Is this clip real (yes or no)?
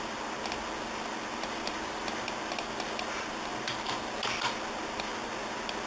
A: yes